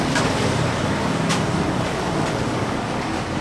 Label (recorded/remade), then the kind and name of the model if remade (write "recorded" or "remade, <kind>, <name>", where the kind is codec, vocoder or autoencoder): remade, codec, DAC